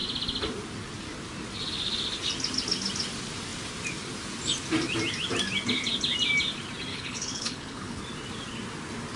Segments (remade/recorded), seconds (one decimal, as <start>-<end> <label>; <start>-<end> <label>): 0.0-6.9 recorded; 6.9-8.0 remade; 8.0-9.2 recorded